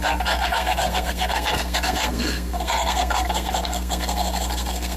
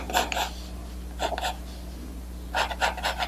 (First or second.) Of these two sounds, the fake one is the first